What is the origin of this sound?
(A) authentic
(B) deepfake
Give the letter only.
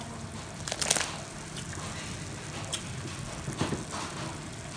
A